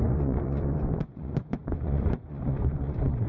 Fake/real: fake